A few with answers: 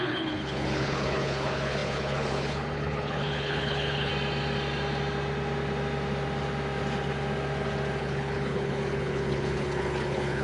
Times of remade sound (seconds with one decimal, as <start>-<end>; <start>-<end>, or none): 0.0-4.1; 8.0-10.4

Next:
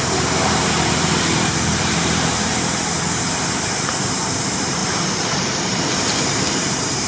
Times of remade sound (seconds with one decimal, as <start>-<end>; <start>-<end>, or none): 0.0-2.5; 4.2-7.1

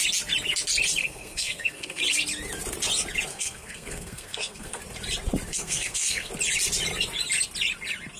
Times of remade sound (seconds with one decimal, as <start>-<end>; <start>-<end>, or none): 1.0-2.0; 3.3-4.8; 5.5-6.3